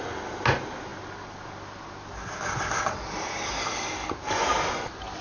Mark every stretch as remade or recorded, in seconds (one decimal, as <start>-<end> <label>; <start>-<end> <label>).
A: 0.0-5.2 recorded